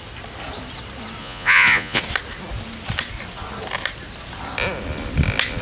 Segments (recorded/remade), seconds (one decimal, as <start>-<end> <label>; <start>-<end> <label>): 0.0-1.2 recorded; 1.2-2.0 remade; 2.0-5.6 recorded